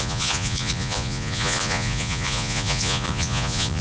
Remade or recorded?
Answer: remade